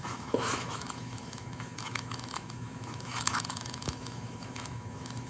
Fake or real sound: fake